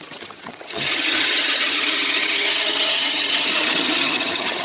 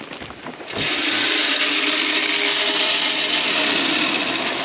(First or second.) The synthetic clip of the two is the first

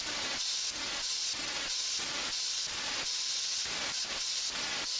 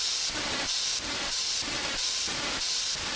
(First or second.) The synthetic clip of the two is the second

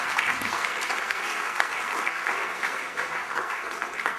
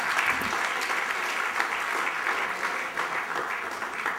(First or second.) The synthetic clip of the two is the first